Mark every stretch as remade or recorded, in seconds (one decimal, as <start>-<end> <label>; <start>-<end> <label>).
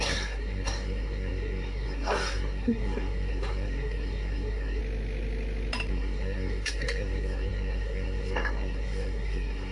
0.0-4.8 remade; 4.8-5.9 recorded; 5.9-9.7 remade